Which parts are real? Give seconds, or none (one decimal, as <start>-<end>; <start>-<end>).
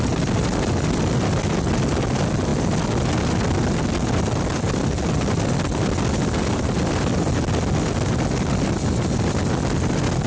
0.0-10.3